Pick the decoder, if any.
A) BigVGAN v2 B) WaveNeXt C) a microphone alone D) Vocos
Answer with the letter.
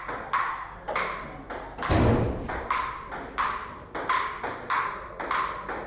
C